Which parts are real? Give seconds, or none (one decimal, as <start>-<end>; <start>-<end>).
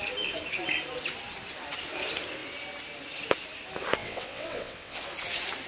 0.0-4.0; 5.0-5.7